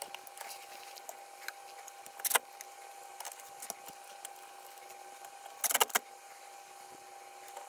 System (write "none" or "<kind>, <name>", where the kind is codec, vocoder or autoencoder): none